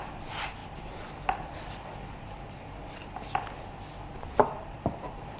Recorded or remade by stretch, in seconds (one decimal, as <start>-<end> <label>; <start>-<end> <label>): 0.0-5.4 recorded